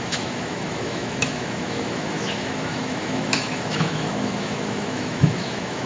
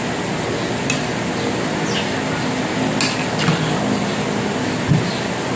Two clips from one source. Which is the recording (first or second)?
second